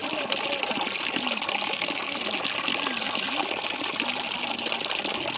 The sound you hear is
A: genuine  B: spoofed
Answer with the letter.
A